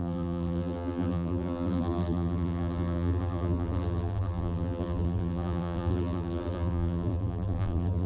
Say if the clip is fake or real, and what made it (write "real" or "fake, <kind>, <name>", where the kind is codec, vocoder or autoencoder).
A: fake, vocoder, BigVGAN v2